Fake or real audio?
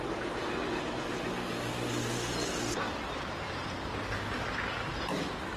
real